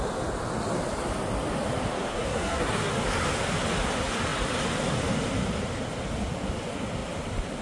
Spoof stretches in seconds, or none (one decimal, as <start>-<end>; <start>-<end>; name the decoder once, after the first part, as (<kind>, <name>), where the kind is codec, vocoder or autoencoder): 2.1-2.9 (codec, SNAC)